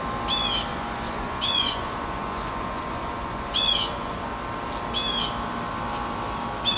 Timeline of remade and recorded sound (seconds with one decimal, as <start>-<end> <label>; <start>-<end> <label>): 0.0-0.7 recorded; 0.7-4.3 remade; 4.3-6.8 recorded